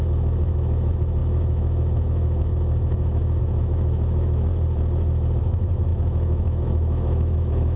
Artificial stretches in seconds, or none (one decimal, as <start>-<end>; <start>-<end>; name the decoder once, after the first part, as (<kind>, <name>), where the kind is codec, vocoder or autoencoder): 0.0-4.5 (autoencoder, DAC-VAE); 5.4-7.8